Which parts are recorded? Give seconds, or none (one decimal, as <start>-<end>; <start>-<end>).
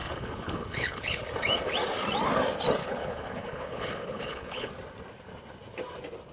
1.2-2.8; 4.7-6.3